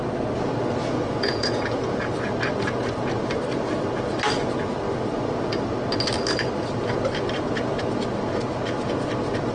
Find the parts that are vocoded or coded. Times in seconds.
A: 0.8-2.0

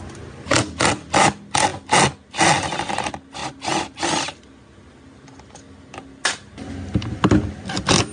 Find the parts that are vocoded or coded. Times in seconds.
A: none

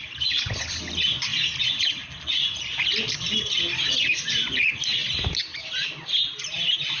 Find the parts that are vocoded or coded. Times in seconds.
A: none

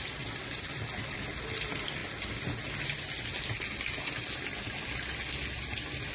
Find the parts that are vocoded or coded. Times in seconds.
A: none

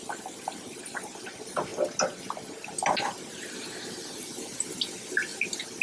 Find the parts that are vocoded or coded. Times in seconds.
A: none

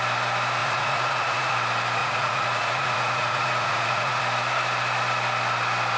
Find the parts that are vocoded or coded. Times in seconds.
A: 0.6-1.5; 2.0-4.2

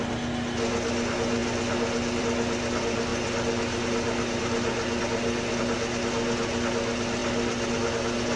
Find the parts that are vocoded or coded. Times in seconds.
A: none